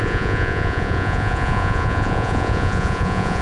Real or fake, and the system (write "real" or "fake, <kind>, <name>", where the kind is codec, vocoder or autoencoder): fake, vocoder, Vocos